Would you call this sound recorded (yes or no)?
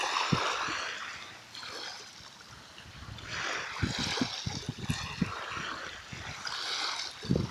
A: yes